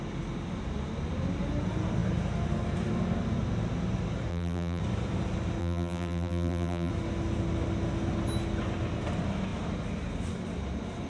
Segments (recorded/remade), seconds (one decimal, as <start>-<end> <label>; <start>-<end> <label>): 0.0-4.3 recorded; 4.3-4.8 remade; 4.8-5.6 recorded; 5.6-6.9 remade; 6.9-11.1 recorded